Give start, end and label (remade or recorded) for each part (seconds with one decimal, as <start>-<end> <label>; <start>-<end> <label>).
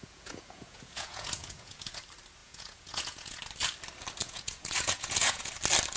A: 0.0-2.0 remade; 2.0-2.4 recorded; 2.4-3.4 remade; 3.4-4.2 recorded; 4.2-5.5 remade; 5.5-6.0 recorded